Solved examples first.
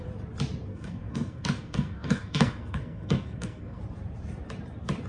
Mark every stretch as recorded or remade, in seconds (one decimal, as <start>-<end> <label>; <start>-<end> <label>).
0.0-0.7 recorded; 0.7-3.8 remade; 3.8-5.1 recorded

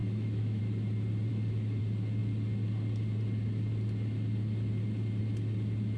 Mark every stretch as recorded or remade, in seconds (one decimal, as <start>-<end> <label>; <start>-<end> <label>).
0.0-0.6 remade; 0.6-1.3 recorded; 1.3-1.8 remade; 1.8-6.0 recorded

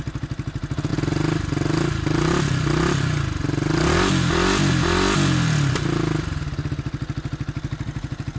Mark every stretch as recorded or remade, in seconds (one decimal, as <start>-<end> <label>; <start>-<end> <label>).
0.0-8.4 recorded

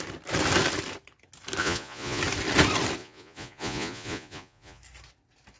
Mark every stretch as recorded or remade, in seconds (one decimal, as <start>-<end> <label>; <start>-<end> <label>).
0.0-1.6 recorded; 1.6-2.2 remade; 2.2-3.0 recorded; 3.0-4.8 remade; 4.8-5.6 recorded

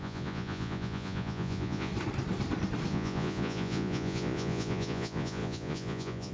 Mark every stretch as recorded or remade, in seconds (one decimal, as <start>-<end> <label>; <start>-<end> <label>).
0.0-1.9 remade; 1.9-2.9 recorded; 2.9-6.3 remade

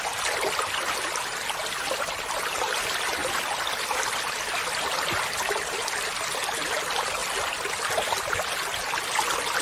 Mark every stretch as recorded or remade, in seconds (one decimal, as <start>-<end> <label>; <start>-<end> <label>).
0.0-9.6 recorded

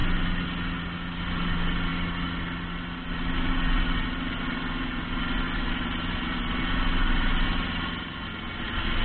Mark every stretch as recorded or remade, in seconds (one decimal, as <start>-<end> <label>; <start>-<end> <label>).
0.0-9.0 recorded